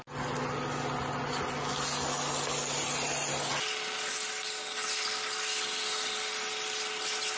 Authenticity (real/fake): real